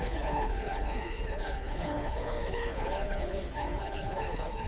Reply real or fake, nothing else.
fake